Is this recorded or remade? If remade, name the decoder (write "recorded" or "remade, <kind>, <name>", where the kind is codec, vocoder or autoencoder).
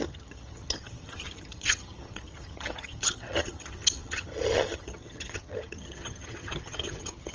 remade, vocoder, HiFi-GAN